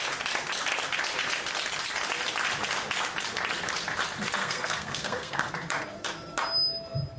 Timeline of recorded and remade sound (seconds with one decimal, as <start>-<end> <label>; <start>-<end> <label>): 0.0-4.4 recorded; 4.4-5.5 remade; 5.5-7.2 recorded